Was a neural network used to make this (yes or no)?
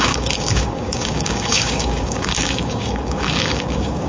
yes